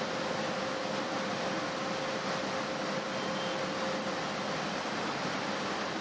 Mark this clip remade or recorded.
recorded